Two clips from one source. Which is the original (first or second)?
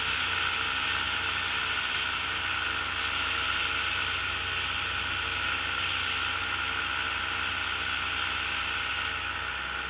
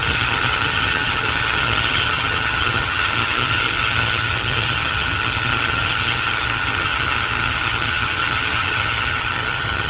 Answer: first